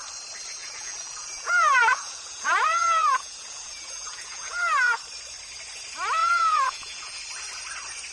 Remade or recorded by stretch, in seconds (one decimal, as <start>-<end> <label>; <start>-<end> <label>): 0.0-0.6 recorded; 0.6-5.0 remade; 5.0-6.2 recorded; 6.2-7.2 remade; 7.2-8.1 recorded